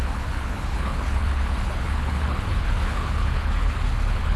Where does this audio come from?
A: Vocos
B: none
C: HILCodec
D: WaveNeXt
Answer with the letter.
C